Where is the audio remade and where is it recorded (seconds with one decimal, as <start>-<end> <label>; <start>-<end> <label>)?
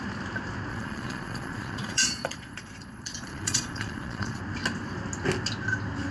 0.0-0.7 recorded; 0.7-4.4 remade; 4.4-6.1 recorded